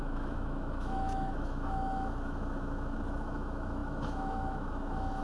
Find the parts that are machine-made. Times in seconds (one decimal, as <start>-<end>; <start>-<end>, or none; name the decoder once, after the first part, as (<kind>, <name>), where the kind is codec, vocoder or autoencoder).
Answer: 0.0-5.2 (autoencoder, DAC-VAE)